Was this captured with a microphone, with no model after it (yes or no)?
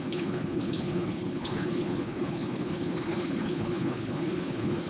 no